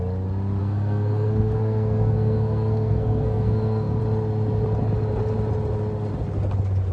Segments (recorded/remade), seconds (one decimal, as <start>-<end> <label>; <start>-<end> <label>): 0.0-0.6 recorded; 0.6-4.0 remade; 4.0-6.9 recorded